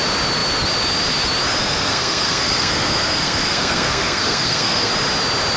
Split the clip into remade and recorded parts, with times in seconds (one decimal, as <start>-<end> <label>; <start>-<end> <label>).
0.0-1.6 recorded; 1.6-4.9 remade; 4.9-5.6 recorded